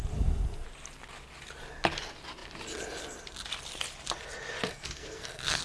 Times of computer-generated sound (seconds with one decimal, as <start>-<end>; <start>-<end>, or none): 4.7-5.6